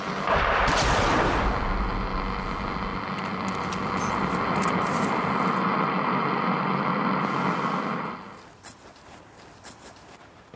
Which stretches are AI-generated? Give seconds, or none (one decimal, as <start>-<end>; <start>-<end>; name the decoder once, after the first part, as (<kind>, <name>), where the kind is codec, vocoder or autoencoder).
none

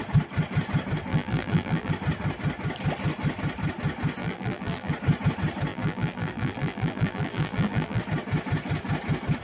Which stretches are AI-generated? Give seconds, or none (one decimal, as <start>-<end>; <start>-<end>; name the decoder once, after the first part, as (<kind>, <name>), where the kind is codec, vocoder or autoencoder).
1.1-1.9 (vocoder, BigVGAN v2); 4.2-4.9; 5.7-8.0